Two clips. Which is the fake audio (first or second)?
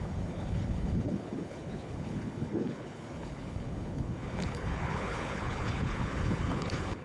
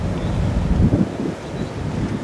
first